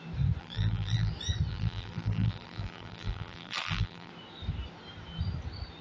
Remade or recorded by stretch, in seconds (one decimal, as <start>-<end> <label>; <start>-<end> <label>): 0.0-0.4 recorded; 0.4-1.1 remade; 1.1-1.5 recorded; 1.5-4.1 remade; 4.1-5.8 recorded